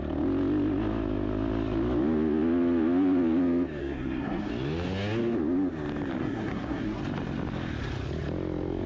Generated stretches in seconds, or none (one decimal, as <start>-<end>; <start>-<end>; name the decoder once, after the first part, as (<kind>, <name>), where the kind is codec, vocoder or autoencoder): 3.8-4.5 (codec, SNAC); 6.2-7.0